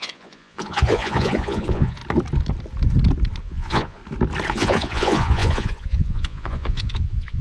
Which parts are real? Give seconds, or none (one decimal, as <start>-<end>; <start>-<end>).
2.0-3.4; 4.0-4.5